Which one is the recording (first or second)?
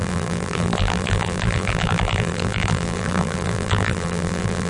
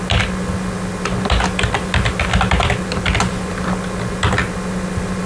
second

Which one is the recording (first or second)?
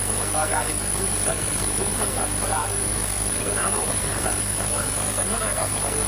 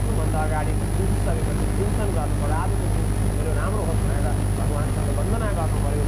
second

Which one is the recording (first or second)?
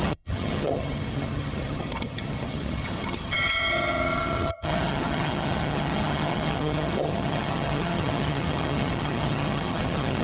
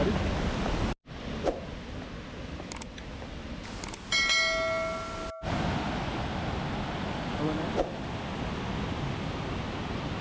second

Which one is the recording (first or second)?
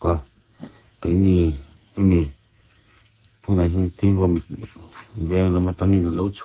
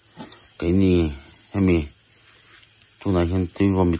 second